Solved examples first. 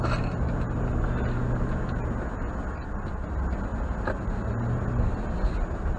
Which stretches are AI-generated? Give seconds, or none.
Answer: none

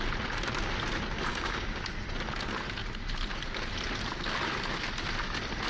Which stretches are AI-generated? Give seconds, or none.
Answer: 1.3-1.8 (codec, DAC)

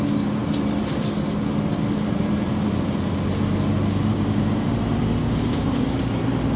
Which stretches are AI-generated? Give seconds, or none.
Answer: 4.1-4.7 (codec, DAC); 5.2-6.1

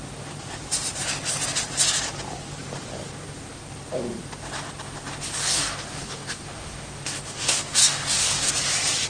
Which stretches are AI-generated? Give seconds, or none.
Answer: 5.4-8.5 (codec, DAC)

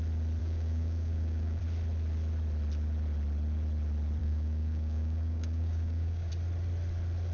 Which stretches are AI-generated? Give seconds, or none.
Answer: 0.4-1.6 (codec, DAC); 4.2-6.3